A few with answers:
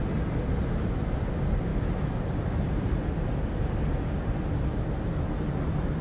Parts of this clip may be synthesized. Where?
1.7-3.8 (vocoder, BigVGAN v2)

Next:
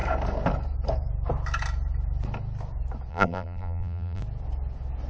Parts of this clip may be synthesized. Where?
3.1-4.2 (vocoder, BigVGAN v2)